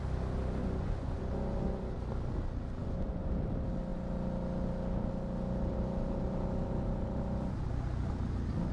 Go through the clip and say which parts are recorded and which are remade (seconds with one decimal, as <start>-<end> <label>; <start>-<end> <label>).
0.0-0.6 recorded; 0.6-1.2 remade; 1.2-2.8 recorded; 2.8-3.3 remade; 3.3-8.7 recorded